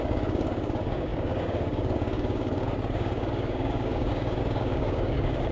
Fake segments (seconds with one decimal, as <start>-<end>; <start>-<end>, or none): 0.0-5.5